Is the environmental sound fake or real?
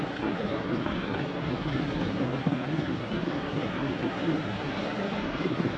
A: fake